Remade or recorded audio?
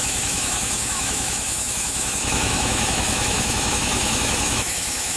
remade